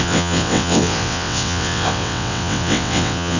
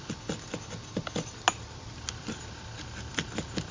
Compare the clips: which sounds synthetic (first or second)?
first